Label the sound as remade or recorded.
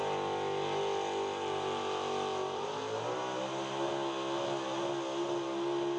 recorded